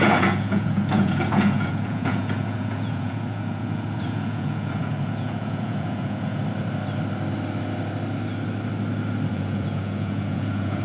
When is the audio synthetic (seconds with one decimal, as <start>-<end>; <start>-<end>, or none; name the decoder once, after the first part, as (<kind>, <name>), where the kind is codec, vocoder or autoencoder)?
0.0-6.4 (vocoder, Vocos); 9.3-10.8